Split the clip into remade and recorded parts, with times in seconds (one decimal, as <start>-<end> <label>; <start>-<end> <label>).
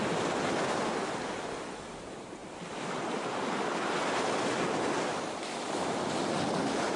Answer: 0.0-7.0 recorded